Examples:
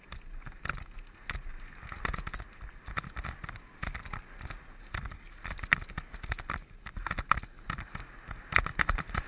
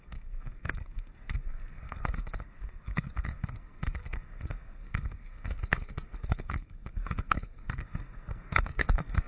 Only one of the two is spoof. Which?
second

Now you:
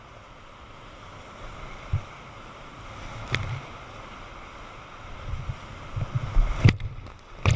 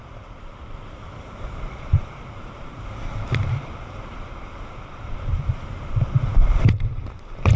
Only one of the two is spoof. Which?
second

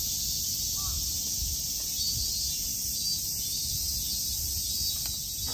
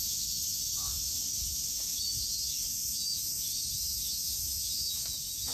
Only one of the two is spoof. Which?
second